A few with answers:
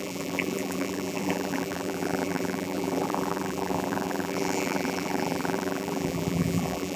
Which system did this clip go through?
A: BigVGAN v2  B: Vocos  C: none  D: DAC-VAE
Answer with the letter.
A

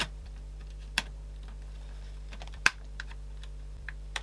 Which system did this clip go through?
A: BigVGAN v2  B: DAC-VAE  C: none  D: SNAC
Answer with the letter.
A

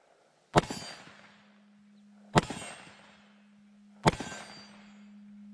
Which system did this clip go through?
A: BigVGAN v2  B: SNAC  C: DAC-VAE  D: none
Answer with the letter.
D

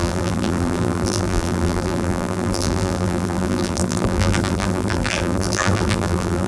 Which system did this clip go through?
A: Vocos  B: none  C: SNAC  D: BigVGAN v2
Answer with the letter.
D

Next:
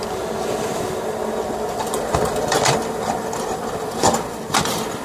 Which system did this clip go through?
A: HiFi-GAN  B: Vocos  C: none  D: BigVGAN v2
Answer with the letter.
D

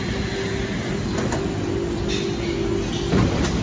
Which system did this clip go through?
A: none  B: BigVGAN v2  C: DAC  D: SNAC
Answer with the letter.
A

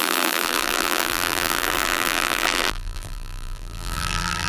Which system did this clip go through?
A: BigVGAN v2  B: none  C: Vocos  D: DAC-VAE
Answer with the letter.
A